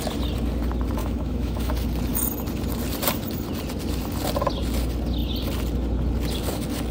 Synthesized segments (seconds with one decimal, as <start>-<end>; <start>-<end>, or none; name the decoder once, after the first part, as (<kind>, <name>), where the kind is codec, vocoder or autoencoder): 1.0-1.7 (autoencoder, DAC-VAE)